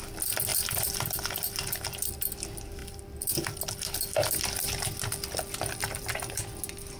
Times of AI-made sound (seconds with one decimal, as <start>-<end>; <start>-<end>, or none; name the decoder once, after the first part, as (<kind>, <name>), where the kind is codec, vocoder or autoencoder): 0.5-2.2 (vocoder, BigVGAN v2); 2.8-6.1